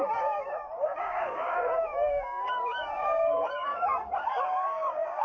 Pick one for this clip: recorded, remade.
remade